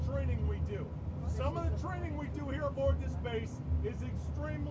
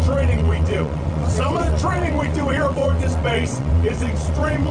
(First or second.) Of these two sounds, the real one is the first